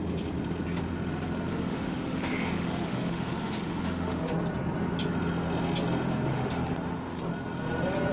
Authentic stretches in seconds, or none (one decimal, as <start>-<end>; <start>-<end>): 0.0-1.5; 4.3-6.3; 7.2-8.1